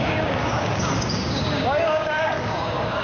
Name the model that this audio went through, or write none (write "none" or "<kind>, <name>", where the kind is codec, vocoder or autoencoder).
codec, DAC